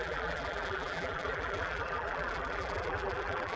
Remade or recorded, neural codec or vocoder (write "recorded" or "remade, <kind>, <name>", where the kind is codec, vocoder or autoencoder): remade, vocoder, BigVGAN v2